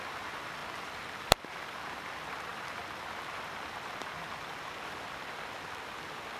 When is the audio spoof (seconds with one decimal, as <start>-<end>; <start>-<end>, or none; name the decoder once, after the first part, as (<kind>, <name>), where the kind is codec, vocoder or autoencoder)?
0.0-6.4 (vocoder, BigVGAN v2)